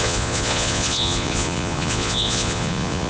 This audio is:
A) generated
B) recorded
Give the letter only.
A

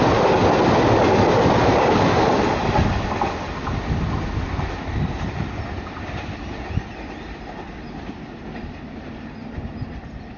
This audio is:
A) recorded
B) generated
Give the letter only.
A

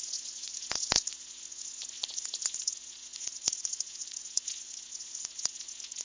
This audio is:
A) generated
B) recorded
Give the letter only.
A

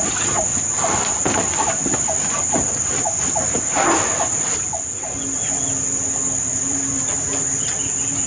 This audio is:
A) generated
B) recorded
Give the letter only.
B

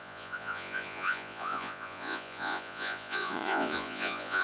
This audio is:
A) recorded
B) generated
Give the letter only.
B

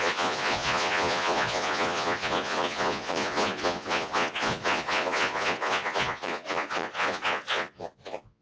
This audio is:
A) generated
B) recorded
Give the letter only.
A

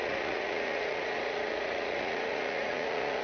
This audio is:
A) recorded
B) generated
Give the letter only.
B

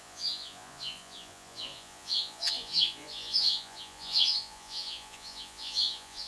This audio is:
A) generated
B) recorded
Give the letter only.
A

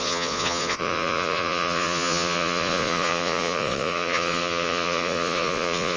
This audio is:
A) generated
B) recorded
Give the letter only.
A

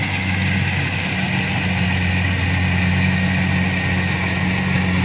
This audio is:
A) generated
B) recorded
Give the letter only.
B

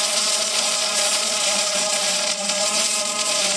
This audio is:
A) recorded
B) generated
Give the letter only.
B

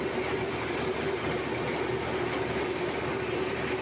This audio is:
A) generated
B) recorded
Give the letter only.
B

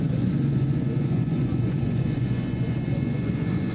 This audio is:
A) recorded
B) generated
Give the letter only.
B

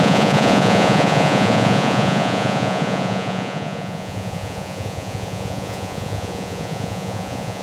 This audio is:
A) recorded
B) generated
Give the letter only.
B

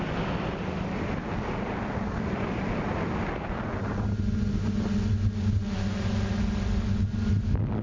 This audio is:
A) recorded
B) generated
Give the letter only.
A